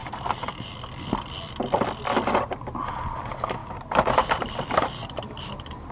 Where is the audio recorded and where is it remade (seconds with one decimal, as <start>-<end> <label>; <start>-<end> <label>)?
0.0-0.7 remade; 0.7-3.6 recorded; 3.6-5.9 remade